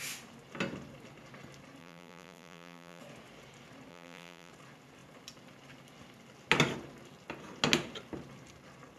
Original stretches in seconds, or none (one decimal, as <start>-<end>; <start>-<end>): 0.0-1.8; 3.0-3.9; 4.5-9.0